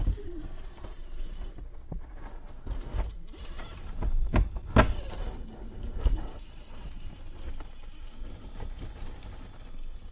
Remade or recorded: recorded